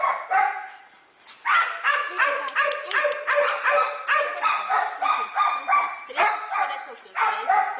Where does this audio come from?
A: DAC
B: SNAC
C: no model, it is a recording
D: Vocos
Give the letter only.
C